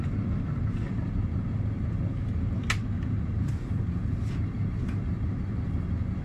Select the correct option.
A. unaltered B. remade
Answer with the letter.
A